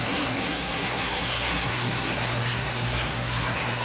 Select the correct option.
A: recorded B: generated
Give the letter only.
B